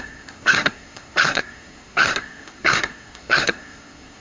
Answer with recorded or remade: remade